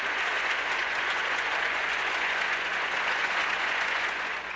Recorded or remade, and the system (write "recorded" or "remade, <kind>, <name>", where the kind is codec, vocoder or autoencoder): remade, vocoder, Vocos